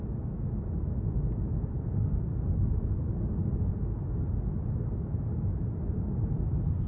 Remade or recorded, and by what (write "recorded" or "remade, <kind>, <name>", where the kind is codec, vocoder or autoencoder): recorded